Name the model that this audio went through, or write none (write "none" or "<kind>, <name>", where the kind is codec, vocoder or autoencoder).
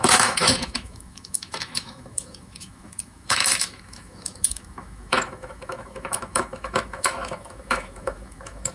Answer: autoencoder, DAC-VAE